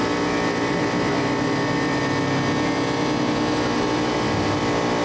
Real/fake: real